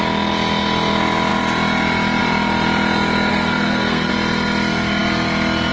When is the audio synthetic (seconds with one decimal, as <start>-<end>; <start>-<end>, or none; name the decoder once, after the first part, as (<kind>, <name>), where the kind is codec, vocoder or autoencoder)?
3.3-4.1 (codec, SNAC)